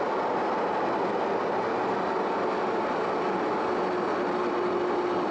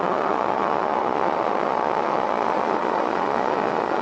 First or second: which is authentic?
first